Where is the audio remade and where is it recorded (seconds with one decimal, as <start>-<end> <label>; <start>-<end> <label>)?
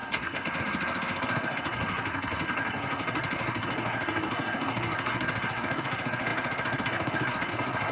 0.0-7.9 remade